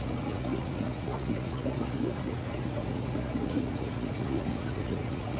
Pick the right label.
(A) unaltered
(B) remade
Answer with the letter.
B